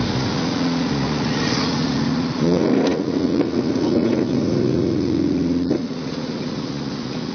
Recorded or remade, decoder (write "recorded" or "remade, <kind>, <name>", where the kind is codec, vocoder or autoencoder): remade, vocoder, Vocos